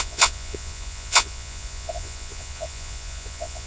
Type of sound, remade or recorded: remade